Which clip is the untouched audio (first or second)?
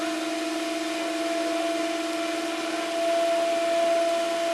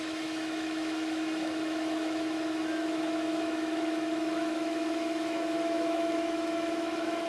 first